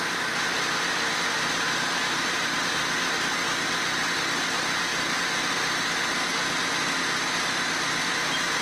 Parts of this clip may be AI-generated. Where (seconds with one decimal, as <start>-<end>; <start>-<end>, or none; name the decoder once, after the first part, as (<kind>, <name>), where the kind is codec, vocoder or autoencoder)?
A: none